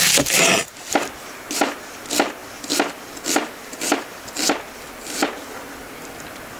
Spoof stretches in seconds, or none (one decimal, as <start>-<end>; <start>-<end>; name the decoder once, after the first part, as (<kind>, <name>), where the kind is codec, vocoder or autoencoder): none